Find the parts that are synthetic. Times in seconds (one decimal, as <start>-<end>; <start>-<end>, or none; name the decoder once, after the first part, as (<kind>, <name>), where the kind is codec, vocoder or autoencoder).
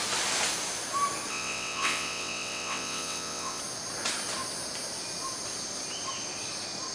1.3-3.6 (vocoder, WaveNeXt)